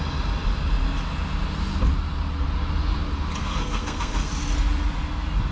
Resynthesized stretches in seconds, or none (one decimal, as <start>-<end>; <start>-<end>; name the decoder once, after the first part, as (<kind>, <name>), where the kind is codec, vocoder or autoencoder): 3.4-4.3 (codec, SNAC)